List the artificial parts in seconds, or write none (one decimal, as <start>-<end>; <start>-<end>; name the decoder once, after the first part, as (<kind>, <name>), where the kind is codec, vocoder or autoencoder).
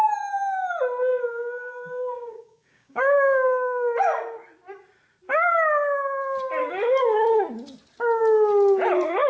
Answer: 1.0-4.0 (codec, DAC)